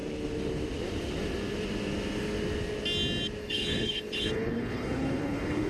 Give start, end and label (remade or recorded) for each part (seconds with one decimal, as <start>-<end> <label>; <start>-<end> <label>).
0.0-3.4 recorded; 3.4-5.7 remade